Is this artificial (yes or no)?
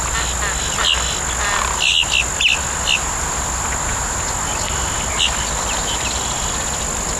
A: no